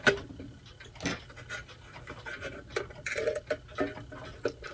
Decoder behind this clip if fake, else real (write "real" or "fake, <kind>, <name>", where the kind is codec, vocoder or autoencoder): real